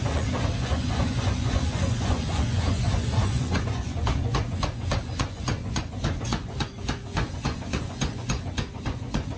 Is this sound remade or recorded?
remade